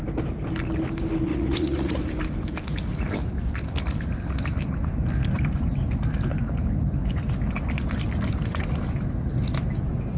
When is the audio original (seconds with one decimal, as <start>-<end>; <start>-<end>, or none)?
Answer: 0.0-1.3; 2.0-10.2